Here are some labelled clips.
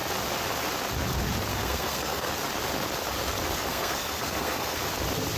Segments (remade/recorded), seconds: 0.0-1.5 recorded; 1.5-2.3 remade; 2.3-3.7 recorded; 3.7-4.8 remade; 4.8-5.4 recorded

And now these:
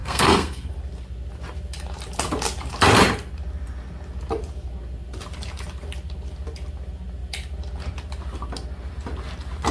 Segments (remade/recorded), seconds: 0.0-0.7 remade; 0.7-9.7 recorded

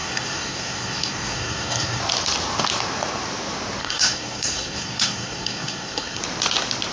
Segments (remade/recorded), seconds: 0.0-2.0 remade; 2.0-3.8 recorded; 3.8-6.2 remade; 6.2-6.9 recorded

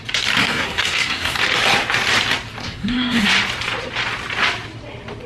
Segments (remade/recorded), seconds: 0.0-0.4 recorded; 0.4-1.4 remade; 1.4-2.6 recorded; 2.6-3.3 remade; 3.3-5.3 recorded

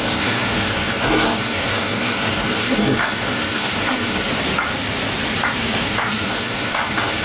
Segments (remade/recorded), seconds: 0.0-4.3 remade; 4.3-5.9 recorded; 5.9-7.2 remade

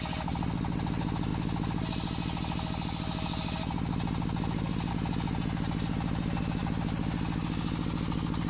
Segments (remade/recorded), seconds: 0.0-8.5 recorded